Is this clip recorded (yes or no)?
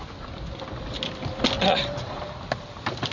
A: yes